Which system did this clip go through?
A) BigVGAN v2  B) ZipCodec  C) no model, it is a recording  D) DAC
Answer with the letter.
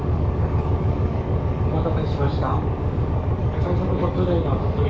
D